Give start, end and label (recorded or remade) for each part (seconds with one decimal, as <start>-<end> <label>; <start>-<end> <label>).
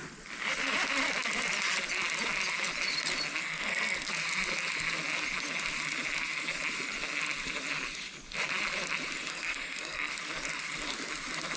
0.0-3.4 recorded; 3.4-4.1 remade; 4.1-9.3 recorded; 9.3-10.1 remade; 10.1-11.6 recorded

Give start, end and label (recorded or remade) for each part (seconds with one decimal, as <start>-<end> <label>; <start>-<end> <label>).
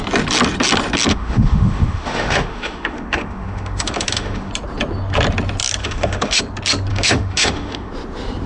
0.0-1.1 recorded; 1.1-4.5 remade; 4.5-5.8 recorded; 5.8-6.4 remade; 6.4-6.9 recorded; 6.9-7.9 remade; 7.9-8.5 recorded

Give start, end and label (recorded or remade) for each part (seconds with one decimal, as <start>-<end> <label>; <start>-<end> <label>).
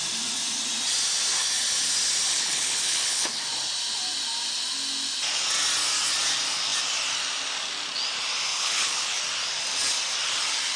0.0-2.3 recorded; 2.3-3.4 remade; 3.4-8.5 recorded; 8.5-9.2 remade; 9.2-10.8 recorded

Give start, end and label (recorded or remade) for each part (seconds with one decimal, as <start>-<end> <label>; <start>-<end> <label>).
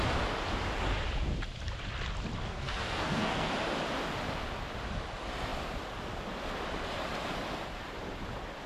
0.0-2.4 recorded; 2.4-3.5 remade; 3.5-8.7 recorded